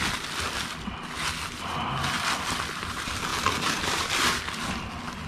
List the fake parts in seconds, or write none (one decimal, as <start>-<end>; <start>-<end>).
none

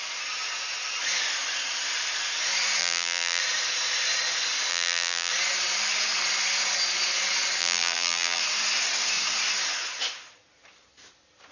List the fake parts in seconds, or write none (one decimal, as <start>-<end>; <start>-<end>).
2.8-3.4; 4.7-5.3; 7.6-8.4

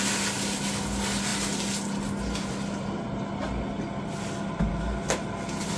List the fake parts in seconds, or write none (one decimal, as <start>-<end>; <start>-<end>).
none

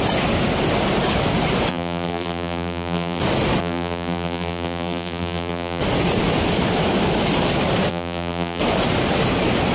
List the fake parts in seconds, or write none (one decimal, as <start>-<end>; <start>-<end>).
1.7-3.2; 3.6-5.8; 7.9-8.6

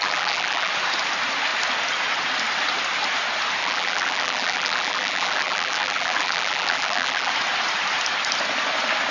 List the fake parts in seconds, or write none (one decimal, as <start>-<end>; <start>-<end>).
0.0-0.7; 3.6-7.3

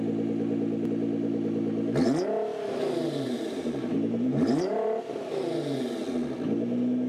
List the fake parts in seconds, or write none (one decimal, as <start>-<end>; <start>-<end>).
2.5-5.0

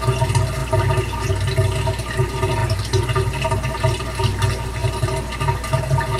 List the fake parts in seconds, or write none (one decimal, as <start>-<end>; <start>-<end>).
none

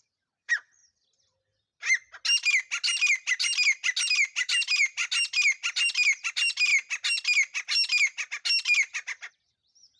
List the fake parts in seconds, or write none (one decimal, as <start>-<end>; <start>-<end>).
0.0-0.8; 4.1-5.0; 6.3-6.7; 9.3-10.0